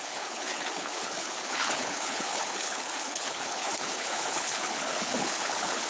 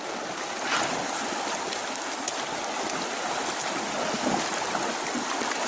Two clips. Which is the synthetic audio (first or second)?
first